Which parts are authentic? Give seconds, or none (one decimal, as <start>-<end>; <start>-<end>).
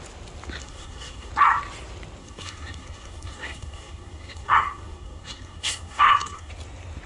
0.0-0.6; 1.3-2.2; 6.5-7.1